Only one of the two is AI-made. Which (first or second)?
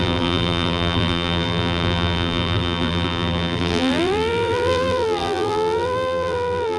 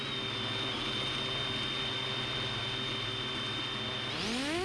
first